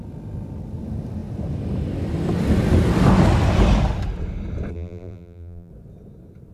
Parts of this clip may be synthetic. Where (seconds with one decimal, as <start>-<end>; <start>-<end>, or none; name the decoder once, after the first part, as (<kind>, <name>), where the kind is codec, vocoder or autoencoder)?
4.7-5.7 (vocoder, BigVGAN v2)